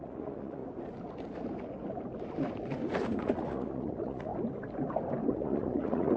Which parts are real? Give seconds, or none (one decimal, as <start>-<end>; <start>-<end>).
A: 0.6-3.2; 4.3-5.3